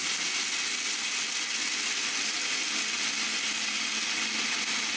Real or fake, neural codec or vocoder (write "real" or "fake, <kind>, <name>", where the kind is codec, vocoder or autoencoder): real